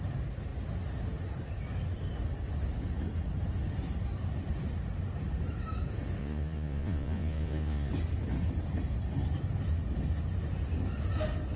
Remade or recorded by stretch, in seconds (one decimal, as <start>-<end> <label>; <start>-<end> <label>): 0.0-6.2 recorded; 6.2-7.9 remade; 7.9-11.6 recorded